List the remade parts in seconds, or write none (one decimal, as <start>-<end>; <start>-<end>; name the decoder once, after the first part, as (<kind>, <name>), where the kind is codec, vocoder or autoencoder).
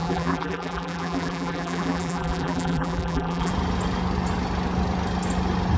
0.0-3.5 (vocoder, BigVGAN v2)